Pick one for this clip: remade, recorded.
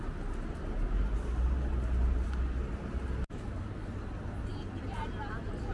recorded